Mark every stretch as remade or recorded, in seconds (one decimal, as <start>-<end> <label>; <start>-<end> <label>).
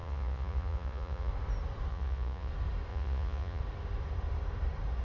0.0-1.3 remade; 1.3-1.9 recorded; 1.9-2.5 remade; 2.5-2.9 recorded; 2.9-3.6 remade; 3.6-5.0 recorded